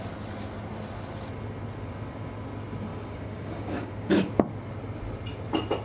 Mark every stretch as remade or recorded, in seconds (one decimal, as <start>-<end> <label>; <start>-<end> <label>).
0.0-2.9 recorded; 2.9-4.3 remade; 4.3-5.8 recorded